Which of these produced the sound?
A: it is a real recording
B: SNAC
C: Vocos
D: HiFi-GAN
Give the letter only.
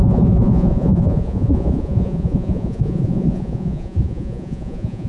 C